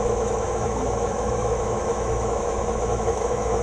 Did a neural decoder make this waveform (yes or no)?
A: yes